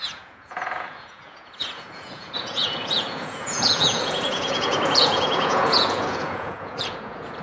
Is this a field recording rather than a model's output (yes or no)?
no